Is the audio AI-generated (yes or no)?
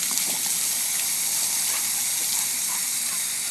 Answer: no